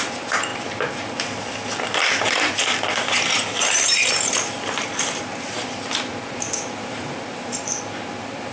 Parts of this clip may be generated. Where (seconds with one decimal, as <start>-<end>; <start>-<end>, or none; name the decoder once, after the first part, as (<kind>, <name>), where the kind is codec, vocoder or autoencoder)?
0.0-0.5 (vocoder, BigVGAN v2); 2.3-8.5